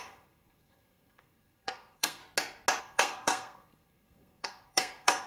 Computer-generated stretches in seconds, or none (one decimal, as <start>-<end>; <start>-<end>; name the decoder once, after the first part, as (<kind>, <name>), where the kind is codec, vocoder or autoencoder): 0.0-2.2 (codec, SNAC); 2.8-5.3